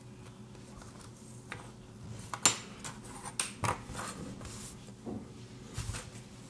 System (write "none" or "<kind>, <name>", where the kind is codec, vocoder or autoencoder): none